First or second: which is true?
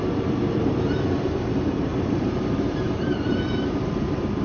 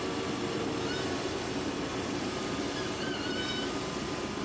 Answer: second